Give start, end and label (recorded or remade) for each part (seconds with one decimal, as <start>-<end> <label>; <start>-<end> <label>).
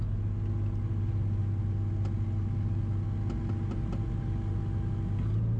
0.0-5.6 recorded